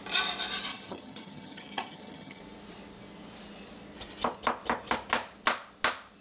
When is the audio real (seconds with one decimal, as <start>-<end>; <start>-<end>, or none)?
0.0-0.7; 2.4-6.2